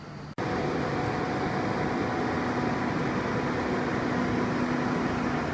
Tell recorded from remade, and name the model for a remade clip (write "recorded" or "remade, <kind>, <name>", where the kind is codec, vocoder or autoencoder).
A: recorded